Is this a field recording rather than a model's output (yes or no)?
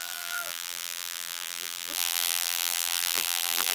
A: no